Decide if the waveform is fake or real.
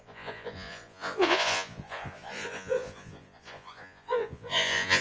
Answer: fake